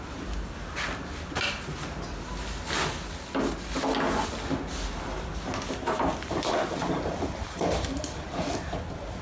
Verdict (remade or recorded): recorded